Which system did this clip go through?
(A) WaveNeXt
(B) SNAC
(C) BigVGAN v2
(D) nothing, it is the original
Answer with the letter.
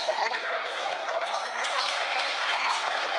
B